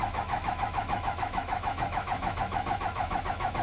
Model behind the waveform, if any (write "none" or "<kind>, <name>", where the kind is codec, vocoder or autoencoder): autoencoder, DAC-VAE